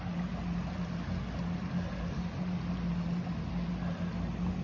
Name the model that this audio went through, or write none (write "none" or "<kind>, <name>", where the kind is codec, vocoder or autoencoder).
none